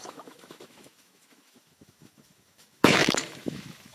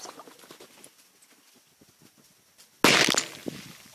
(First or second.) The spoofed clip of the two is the first